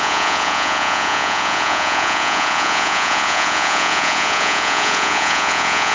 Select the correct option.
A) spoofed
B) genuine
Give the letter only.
A